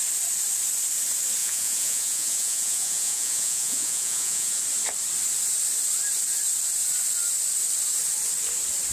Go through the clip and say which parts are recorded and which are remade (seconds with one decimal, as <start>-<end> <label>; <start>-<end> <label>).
0.0-1.4 recorded; 1.4-4.6 remade; 4.6-8.9 recorded